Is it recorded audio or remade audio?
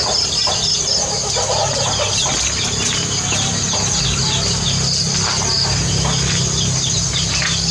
recorded